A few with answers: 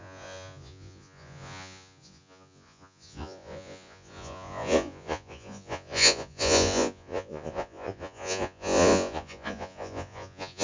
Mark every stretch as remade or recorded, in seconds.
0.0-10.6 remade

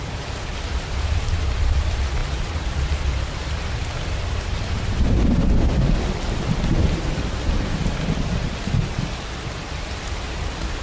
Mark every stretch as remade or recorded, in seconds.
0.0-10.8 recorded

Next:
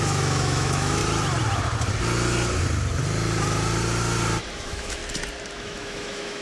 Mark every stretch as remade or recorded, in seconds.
0.0-1.0 remade; 1.0-4.5 recorded; 4.5-5.0 remade; 5.0-5.5 recorded; 5.5-6.4 remade

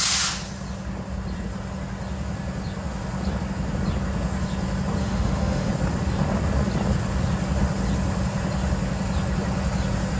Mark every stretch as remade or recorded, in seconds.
0.0-5.0 recorded; 5.0-5.7 remade; 5.7-10.2 recorded

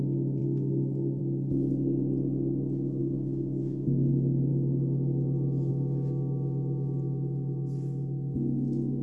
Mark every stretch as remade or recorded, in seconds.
0.0-0.4 recorded; 0.4-1.2 remade; 1.2-3.0 recorded; 3.0-4.1 remade; 4.1-9.0 recorded